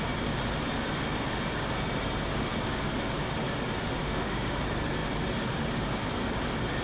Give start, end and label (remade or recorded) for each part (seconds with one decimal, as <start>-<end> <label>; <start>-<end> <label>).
0.0-4.0 recorded; 4.0-4.6 remade; 4.6-6.8 recorded